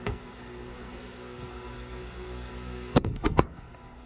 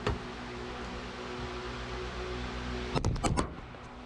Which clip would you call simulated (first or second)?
first